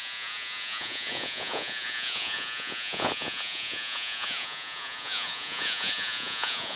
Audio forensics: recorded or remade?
remade